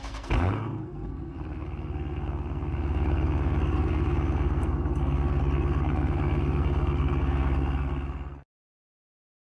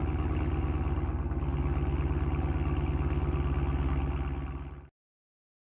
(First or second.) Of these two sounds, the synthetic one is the first